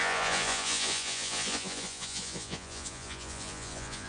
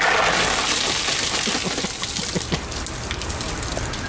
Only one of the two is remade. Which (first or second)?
first